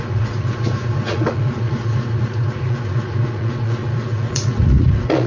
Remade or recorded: remade